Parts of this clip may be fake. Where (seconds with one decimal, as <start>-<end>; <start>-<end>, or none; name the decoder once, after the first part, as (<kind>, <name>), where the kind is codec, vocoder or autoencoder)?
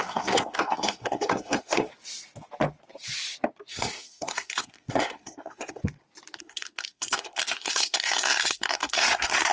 0.0-1.9 (codec, SNAC); 3.7-5.8; 6.4-9.5